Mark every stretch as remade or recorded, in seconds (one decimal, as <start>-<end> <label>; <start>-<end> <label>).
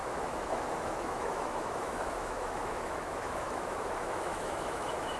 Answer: 0.0-5.2 remade